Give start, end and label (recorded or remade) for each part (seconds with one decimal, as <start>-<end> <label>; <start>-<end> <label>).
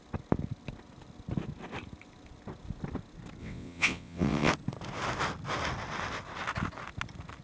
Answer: 0.0-3.4 recorded; 3.4-4.5 remade; 4.5-7.4 recorded